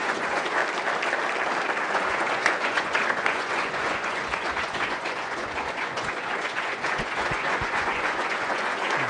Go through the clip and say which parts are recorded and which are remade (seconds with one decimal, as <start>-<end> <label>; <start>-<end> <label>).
0.0-0.6 remade; 0.6-1.9 recorded; 1.9-9.1 remade